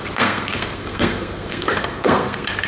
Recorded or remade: remade